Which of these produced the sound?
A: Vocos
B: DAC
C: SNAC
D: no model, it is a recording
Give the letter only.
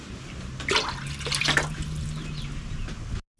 D